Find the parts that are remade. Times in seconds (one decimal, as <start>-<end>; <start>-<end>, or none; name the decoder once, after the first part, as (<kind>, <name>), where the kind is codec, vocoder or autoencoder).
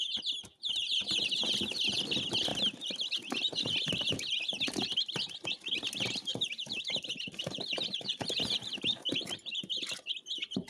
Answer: 0.0-2.5 (vocoder, BigVGAN v2); 3.2-10.7